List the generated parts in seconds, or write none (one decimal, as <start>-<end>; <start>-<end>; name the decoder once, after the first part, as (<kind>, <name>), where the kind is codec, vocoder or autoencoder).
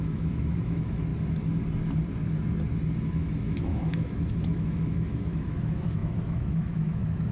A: 0.0-1.1 (autoencoder, DAC-VAE); 3.1-7.3